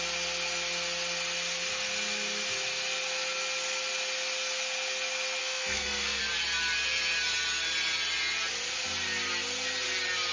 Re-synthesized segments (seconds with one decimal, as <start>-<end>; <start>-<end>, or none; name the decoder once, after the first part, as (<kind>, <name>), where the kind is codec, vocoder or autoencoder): 5.4-6.2 (codec, SNAC)